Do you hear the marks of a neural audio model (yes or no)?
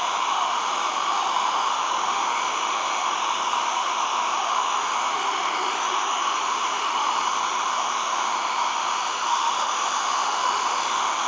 yes